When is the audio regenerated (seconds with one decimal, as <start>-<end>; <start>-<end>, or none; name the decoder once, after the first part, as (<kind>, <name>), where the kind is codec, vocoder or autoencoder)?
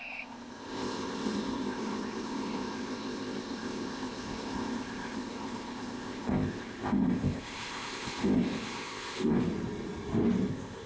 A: 0.0-9.4 (codec, ZipCodec); 10.5-10.9